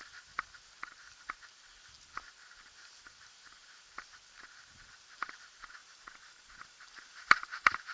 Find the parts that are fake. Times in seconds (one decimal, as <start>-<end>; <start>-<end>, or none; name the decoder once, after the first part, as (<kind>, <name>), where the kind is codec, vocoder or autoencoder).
5.8-7.9 (vocoder, BigVGAN v2)